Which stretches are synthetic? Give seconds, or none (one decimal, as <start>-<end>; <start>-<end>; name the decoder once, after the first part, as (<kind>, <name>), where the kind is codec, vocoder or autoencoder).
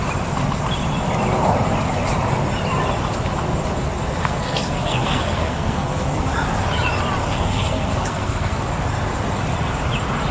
4.2-6.3 (codec, SNAC); 7.2-8.6